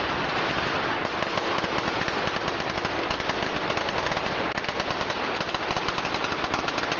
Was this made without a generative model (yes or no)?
yes